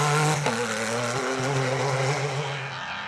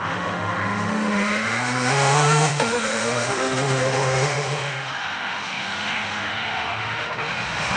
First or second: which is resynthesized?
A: second